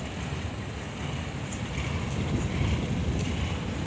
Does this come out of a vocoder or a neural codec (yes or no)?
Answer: no